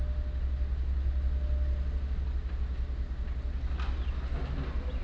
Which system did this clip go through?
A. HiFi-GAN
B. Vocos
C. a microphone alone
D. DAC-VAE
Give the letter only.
C